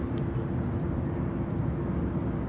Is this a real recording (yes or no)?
yes